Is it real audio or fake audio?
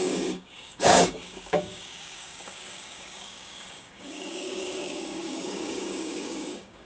fake